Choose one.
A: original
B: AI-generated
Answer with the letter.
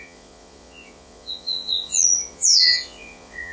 B